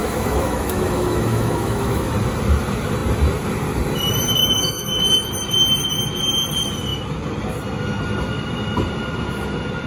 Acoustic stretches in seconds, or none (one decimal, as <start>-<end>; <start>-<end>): 2.1-4.4; 5.0-9.9